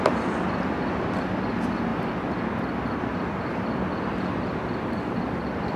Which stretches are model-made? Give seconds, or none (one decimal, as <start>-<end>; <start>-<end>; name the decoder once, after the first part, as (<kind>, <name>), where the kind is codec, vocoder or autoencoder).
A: 1.9-2.7 (vocoder, BigVGAN v2); 3.1-5.8

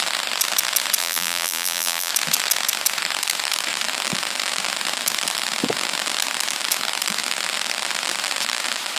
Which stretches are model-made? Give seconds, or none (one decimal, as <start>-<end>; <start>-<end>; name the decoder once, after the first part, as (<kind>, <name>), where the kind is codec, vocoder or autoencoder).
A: 1.0-2.1 (vocoder, BigVGAN v2)

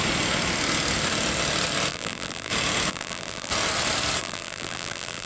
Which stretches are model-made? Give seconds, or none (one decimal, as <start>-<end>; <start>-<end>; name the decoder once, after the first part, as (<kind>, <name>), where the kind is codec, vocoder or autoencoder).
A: 1.9-2.5 (vocoder, BigVGAN v2); 2.9-3.5; 4.2-5.3

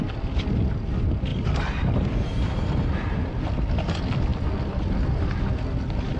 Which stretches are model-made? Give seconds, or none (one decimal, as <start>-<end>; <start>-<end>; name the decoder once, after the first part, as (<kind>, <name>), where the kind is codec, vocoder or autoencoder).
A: 1.3-3.4 (vocoder, BigVGAN v2)

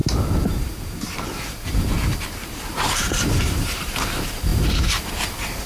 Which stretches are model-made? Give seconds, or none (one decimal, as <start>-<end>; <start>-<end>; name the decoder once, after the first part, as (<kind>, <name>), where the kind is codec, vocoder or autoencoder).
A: 0.0-5.7 (vocoder, BigVGAN v2)

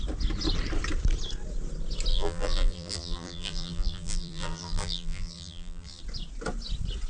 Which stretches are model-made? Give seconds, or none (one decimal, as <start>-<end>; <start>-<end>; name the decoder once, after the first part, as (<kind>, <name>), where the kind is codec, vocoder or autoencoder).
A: 2.1-6.0 (vocoder, BigVGAN v2)